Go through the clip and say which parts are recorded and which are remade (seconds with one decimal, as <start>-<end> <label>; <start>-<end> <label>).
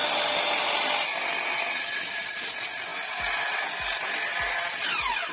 0.0-5.3 recorded